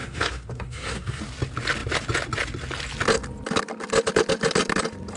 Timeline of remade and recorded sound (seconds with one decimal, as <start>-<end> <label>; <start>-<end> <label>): 0.0-1.2 remade; 1.2-5.2 recorded